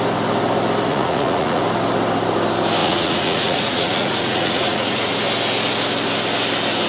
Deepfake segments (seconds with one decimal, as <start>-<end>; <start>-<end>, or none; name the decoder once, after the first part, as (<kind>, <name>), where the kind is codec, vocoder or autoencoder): 0.9-1.6 (vocoder, Vocos); 2.8-5.1